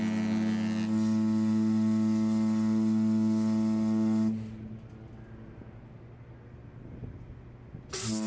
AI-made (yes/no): no